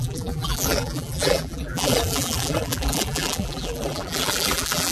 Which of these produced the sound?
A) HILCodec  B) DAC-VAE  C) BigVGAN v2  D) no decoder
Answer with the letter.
C